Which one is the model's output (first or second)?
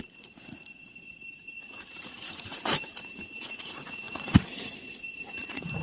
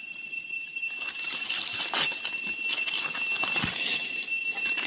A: first